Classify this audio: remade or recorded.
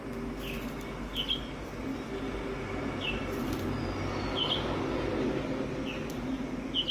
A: recorded